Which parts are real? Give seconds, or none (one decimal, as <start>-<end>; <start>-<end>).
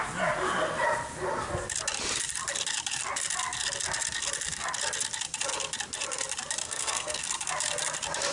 0.0-6.6; 7.2-8.3